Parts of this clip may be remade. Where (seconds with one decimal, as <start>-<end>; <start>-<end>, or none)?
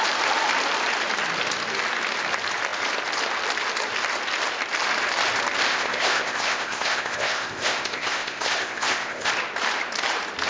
5.7-9.3